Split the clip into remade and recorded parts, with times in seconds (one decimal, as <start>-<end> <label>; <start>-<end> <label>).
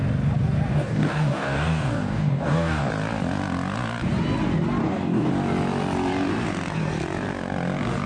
0.0-0.7 recorded; 0.7-2.9 remade; 2.9-4.8 recorded; 4.8-5.3 remade; 5.3-8.1 recorded